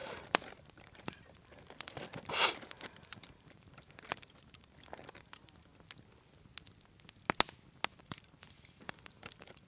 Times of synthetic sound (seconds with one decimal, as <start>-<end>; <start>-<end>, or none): 0.0-5.7; 8.0-9.7